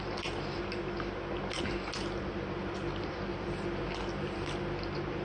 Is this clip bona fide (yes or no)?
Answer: yes